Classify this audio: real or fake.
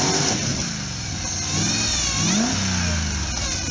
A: real